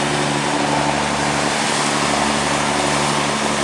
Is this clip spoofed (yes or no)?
no